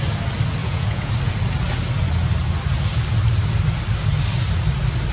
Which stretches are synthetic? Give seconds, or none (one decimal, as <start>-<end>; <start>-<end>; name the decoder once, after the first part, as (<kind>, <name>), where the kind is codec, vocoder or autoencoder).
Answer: 0.6-1.1 (vocoder, Vocos)